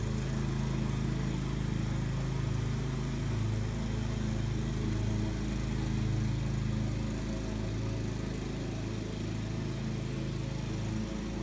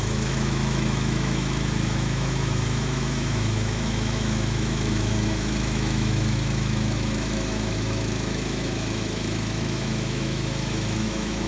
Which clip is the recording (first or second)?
first